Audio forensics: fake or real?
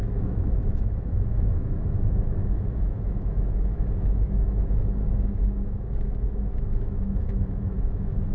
fake